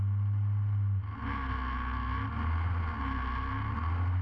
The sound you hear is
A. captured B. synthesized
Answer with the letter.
A